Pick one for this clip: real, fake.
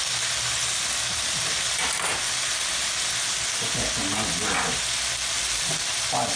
real